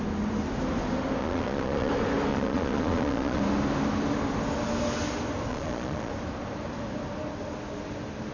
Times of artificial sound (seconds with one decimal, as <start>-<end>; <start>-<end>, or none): 1.2-1.9; 2.3-3.4; 5.5-6.1